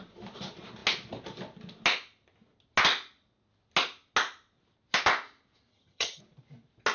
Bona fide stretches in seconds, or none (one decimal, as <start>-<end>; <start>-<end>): 0.0-5.7; 6.2-6.9